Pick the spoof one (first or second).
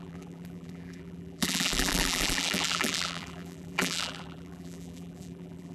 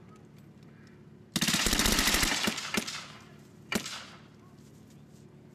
first